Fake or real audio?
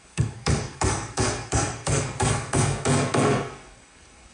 fake